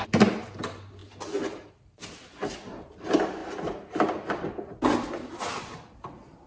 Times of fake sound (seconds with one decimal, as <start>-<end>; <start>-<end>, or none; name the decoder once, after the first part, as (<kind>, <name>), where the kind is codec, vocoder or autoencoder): none